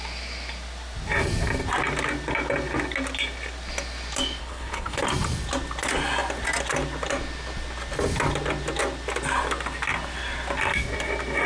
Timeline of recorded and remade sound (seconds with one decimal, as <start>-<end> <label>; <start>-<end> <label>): 0.0-4.4 recorded; 4.4-5.0 remade; 5.0-11.5 recorded